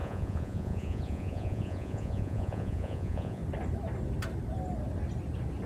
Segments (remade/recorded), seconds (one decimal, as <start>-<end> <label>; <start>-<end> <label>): 0.0-3.4 remade; 3.4-5.7 recorded